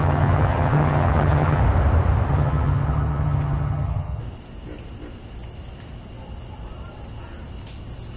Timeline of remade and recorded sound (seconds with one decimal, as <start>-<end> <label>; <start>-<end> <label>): 0.0-1.6 remade; 1.6-2.3 recorded; 2.3-4.2 remade; 4.2-8.2 recorded